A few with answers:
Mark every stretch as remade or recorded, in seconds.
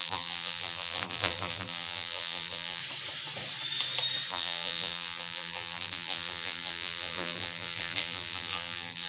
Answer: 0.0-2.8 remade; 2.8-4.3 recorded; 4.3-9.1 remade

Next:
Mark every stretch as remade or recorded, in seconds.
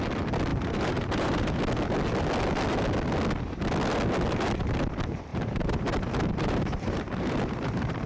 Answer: 0.0-0.5 recorded; 0.5-1.6 remade; 1.6-5.3 recorded; 5.3-8.1 remade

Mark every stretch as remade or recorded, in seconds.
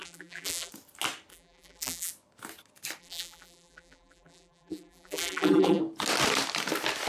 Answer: 0.0-0.7 remade; 0.7-1.3 recorded; 1.3-2.1 remade; 2.1-3.0 recorded; 3.0-5.8 remade; 5.8-7.1 recorded